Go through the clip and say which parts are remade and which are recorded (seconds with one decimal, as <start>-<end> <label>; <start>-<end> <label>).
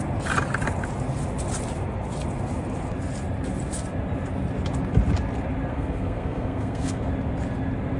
0.0-5.7 recorded; 5.7-7.1 remade; 7.1-8.0 recorded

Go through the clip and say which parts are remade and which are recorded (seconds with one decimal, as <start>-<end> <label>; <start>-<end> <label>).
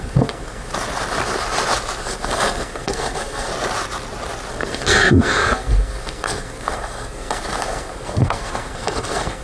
0.0-0.7 remade; 0.7-2.0 recorded; 2.0-3.5 remade; 3.5-4.5 recorded; 4.5-9.4 remade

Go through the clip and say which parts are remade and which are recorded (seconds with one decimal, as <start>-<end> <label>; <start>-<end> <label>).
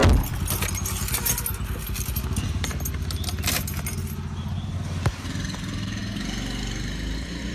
0.0-7.5 recorded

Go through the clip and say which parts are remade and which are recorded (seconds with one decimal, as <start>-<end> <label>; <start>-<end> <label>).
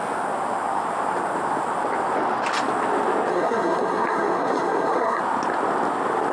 0.0-3.3 recorded; 3.3-5.2 remade; 5.2-6.3 recorded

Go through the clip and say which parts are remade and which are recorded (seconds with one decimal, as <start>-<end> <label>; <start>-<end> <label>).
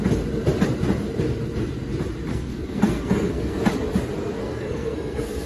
0.0-2.3 recorded; 2.3-3.6 remade; 3.6-4.4 recorded; 4.4-5.5 remade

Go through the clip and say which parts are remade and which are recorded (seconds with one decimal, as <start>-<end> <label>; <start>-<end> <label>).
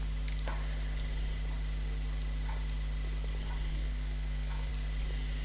0.0-3.7 recorded; 3.7-4.7 remade; 4.7-5.4 recorded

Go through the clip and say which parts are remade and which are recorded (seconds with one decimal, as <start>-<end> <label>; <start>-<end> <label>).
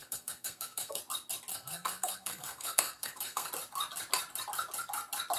0.0-1.0 remade; 1.0-1.5 recorded; 1.5-3.5 remade; 3.5-5.4 recorded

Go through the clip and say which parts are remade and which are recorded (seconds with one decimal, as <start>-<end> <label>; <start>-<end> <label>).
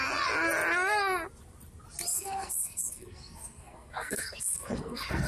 0.0-2.1 recorded; 2.1-5.3 remade